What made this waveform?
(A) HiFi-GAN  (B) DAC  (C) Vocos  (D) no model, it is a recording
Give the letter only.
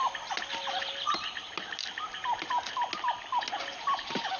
D